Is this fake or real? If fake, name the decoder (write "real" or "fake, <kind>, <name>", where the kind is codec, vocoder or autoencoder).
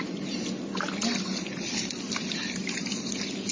real